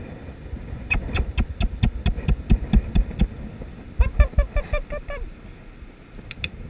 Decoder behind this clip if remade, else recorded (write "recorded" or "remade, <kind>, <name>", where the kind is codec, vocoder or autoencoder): recorded